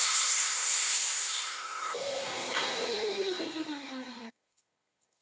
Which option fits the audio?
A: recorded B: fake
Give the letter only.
B